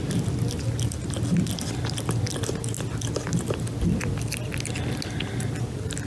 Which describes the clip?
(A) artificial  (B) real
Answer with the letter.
B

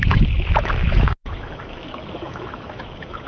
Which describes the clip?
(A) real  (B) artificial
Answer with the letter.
B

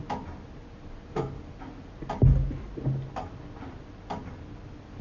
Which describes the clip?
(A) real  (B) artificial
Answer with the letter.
A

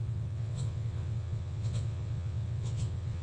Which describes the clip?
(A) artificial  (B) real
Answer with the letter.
A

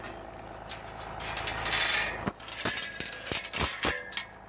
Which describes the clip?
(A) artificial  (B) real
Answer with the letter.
B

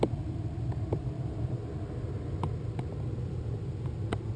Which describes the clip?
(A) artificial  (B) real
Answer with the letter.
A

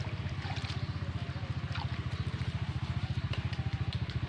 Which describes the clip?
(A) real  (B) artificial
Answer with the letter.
A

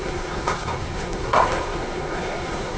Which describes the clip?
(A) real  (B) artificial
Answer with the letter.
B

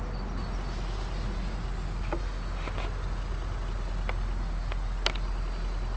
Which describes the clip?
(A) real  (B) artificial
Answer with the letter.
A